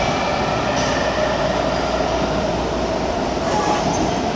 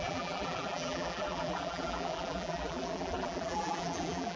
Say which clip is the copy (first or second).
second